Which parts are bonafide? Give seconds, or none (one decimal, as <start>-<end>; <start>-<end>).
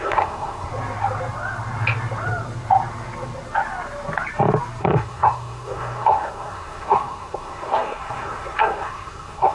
0.7-4.8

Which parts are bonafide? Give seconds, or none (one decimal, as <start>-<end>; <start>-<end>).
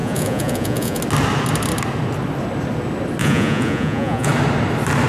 1.0-3.2; 4.3-5.1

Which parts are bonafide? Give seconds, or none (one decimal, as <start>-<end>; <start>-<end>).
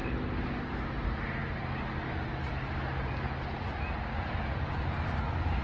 0.0-5.6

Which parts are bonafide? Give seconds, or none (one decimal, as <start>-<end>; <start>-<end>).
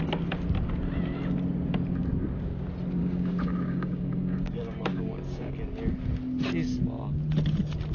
0.0-3.0; 5.5-7.9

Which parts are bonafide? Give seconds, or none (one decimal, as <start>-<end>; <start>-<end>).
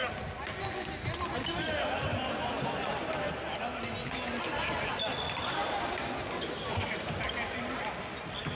0.0-8.5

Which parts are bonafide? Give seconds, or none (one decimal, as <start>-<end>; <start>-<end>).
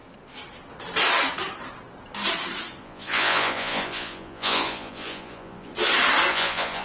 0.0-2.8; 5.7-6.3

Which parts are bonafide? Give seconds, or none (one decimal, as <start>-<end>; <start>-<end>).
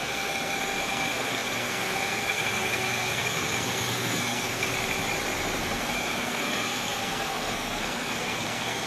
4.7-5.6